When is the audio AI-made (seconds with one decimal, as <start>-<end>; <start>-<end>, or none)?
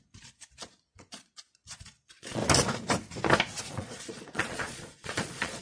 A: 0.0-2.4; 3.6-5.6